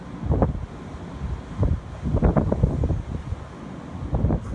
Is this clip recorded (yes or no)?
yes